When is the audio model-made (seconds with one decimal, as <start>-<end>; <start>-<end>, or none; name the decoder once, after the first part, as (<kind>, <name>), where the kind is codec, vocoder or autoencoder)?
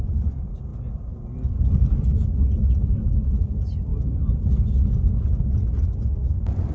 none